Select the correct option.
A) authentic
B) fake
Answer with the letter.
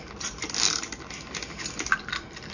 A